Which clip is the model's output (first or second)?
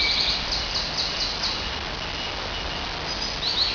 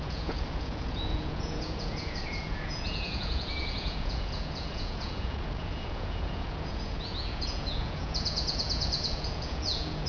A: second